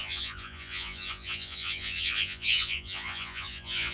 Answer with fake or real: fake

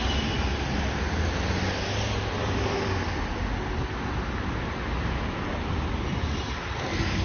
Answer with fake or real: real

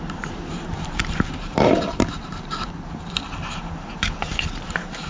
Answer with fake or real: fake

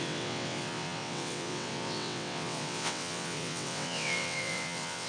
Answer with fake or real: fake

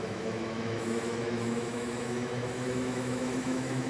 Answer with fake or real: fake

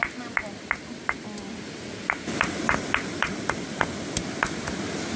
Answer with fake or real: real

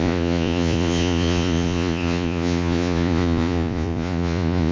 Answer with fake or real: fake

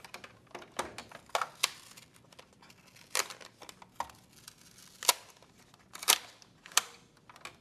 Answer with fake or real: real